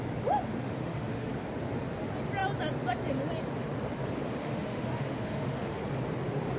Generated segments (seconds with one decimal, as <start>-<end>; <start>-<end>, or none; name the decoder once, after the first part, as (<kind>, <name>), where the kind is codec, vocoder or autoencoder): 0.7-1.3 (autoencoder, DAC-VAE); 4.4-5.8